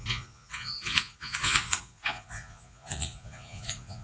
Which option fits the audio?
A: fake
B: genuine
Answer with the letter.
A